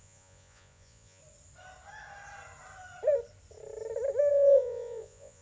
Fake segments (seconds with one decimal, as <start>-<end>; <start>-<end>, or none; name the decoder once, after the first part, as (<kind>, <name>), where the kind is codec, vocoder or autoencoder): 0.0-1.2 (vocoder, Vocos); 4.3-5.4